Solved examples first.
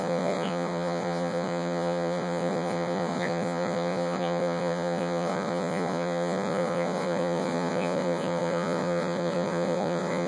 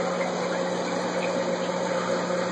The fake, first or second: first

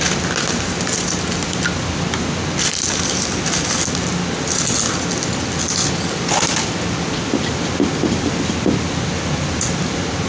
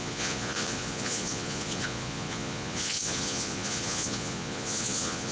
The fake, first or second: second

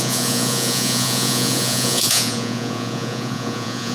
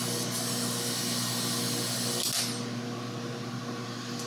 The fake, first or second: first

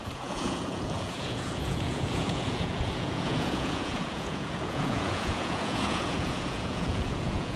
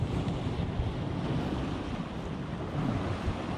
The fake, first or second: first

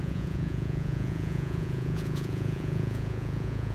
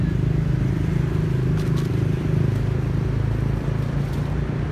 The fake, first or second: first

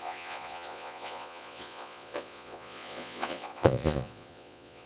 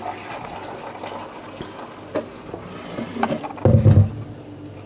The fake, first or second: first